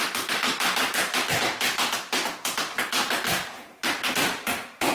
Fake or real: real